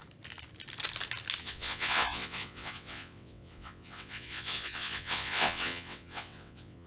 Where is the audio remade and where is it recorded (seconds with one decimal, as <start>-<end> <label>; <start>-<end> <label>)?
0.0-1.4 recorded; 1.4-6.9 remade